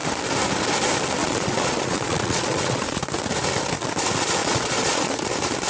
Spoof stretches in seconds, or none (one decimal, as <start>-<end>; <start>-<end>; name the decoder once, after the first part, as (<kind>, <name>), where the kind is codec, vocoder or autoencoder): 1.2-3.0 (vocoder, Vocos); 4.4-5.3